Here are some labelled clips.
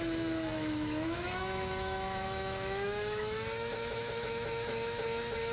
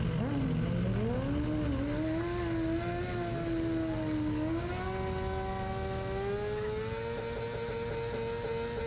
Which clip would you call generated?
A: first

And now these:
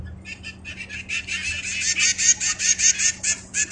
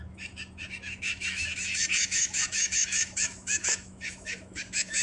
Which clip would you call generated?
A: second